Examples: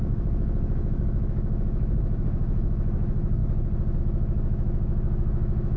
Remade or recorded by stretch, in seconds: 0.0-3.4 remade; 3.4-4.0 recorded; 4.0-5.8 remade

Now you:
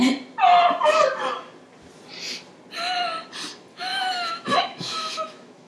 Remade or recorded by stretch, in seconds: 0.0-3.7 recorded; 3.7-5.7 remade

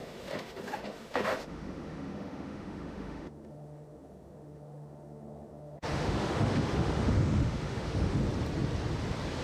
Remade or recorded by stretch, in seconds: 0.0-8.2 remade; 8.2-9.4 recorded

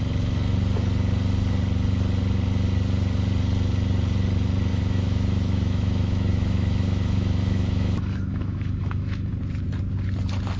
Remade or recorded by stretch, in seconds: 0.0-4.7 recorded; 4.7-9.3 remade; 9.3-10.6 recorded

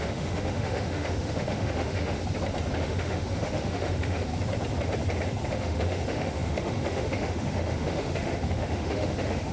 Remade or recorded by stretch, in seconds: 0.0-2.2 remade; 2.2-2.8 recorded; 2.8-4.3 remade; 4.3-5.5 recorded; 5.5-9.5 remade

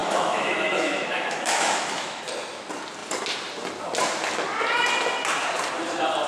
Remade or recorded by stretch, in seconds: 0.0-2.2 remade; 2.2-6.3 recorded

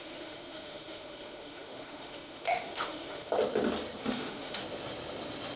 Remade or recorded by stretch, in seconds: 0.0-3.3 remade; 3.3-4.0 recorded; 4.0-4.6 remade; 4.6-5.6 recorded

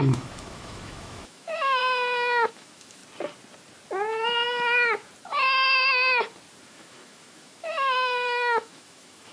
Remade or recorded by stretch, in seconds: 0.0-1.8 remade; 1.8-2.5 recorded; 2.5-3.0 remade; 3.0-6.7 recorded; 6.7-9.3 remade